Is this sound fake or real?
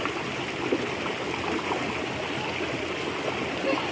real